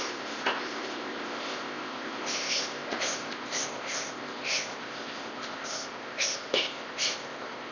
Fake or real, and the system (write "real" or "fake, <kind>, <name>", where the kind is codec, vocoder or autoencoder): fake, codec, ZipCodec